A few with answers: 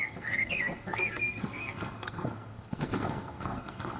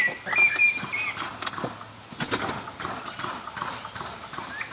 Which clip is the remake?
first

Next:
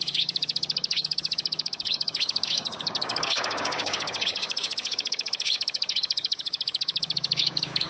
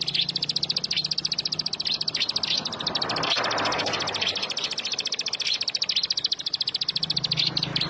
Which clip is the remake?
first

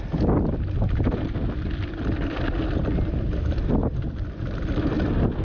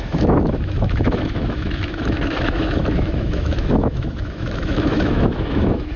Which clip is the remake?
second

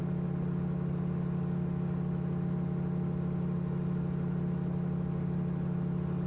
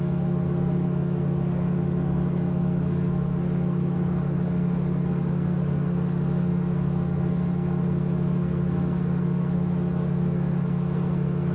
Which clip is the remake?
second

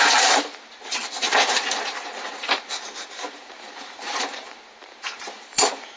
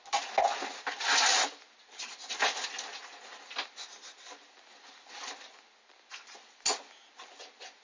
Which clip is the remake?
first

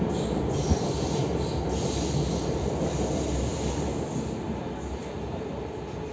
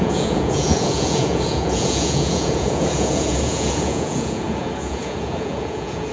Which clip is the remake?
second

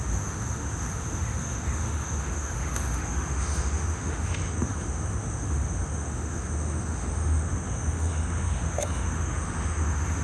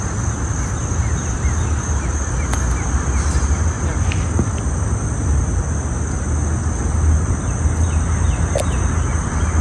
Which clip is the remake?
first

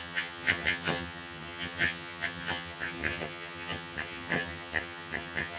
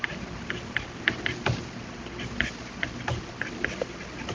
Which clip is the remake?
first